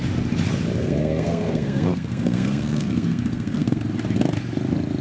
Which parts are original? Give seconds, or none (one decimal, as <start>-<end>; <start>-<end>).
0.0-0.8; 3.8-5.0